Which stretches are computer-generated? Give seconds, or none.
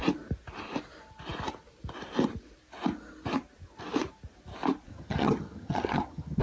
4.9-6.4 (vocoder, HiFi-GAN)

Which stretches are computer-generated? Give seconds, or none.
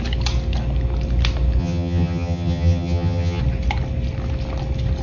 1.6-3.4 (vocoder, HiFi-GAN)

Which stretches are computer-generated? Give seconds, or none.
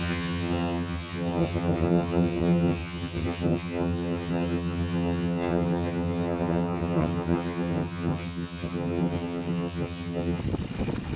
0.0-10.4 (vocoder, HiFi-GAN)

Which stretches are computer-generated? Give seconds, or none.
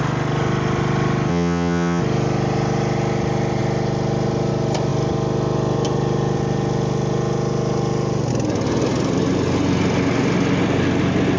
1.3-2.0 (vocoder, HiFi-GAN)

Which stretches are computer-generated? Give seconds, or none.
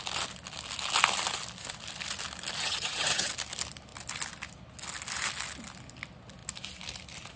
2.6-3.3 (vocoder, HiFi-GAN)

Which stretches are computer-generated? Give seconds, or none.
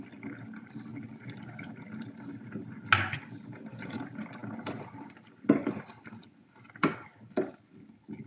none